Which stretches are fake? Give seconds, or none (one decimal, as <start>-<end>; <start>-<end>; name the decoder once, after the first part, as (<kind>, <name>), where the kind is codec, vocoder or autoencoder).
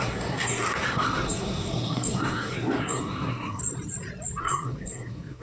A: 0.0-3.6 (codec, SNAC); 4.4-5.4